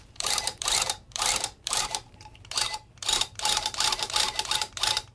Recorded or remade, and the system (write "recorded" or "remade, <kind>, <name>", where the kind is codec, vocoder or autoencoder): remade, vocoder, BigVGAN v2